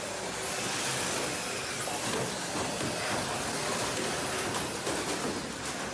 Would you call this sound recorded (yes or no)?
yes